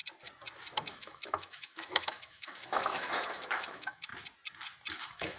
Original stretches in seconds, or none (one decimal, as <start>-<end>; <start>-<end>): 0.0-0.9; 4.1-4.9